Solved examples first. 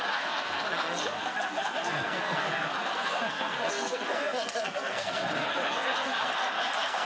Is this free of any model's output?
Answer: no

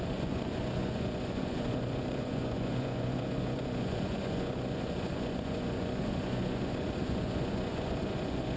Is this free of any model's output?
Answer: no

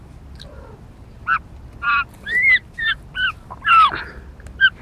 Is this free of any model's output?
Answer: yes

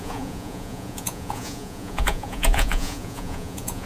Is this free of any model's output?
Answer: no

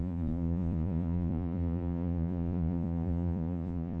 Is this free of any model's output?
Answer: no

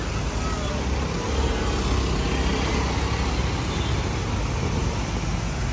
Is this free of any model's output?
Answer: yes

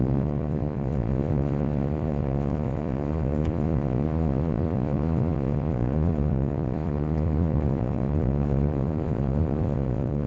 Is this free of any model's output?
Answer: no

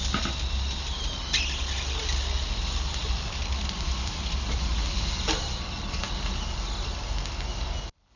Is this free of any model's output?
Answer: yes